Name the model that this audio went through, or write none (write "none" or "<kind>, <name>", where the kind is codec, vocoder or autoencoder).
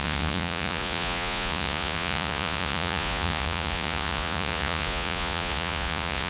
vocoder, Vocos